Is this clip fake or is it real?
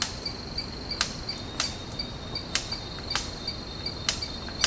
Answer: real